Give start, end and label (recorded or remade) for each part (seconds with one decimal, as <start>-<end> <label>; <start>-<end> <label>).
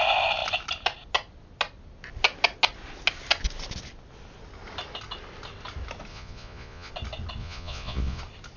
0.0-6.1 recorded; 6.1-6.9 remade; 6.9-7.4 recorded; 7.4-8.2 remade; 8.2-8.6 recorded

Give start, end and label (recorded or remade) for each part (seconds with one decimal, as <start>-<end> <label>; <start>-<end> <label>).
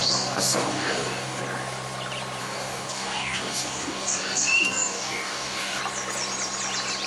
0.0-1.4 remade; 1.4-2.4 recorded; 2.4-5.8 remade; 5.8-7.1 recorded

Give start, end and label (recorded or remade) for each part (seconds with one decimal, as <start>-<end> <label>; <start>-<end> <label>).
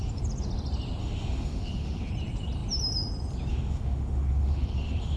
0.0-1.0 recorded; 1.0-2.1 remade; 2.1-3.5 recorded; 3.5-5.2 remade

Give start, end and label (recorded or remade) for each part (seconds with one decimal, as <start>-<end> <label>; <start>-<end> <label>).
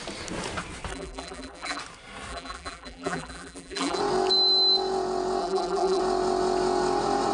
0.0-0.9 recorded; 0.9-1.8 remade; 1.8-2.3 recorded; 2.3-4.0 remade; 4.0-5.4 recorded; 5.4-6.0 remade; 6.0-7.3 recorded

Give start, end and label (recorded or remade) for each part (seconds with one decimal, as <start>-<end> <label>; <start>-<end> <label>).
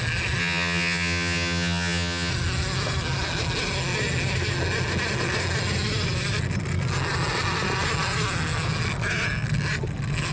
0.0-0.4 recorded; 0.4-2.3 remade; 2.3-10.3 recorded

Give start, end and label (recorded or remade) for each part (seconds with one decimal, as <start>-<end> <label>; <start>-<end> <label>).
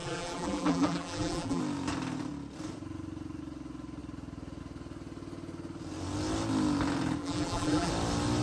0.0-1.6 remade; 1.6-7.2 recorded; 7.2-7.9 remade; 7.9-8.4 recorded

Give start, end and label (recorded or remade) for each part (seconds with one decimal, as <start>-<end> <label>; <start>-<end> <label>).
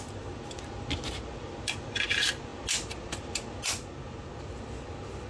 0.0-5.3 recorded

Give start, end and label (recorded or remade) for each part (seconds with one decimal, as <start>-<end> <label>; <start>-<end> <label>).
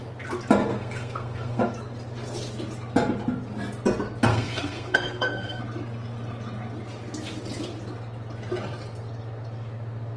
0.0-0.7 recorded; 0.7-1.6 remade; 1.6-4.3 recorded; 4.3-5.6 remade; 5.6-10.2 recorded